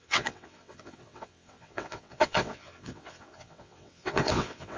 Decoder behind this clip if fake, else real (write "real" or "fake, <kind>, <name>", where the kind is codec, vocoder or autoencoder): fake, vocoder, WaveNeXt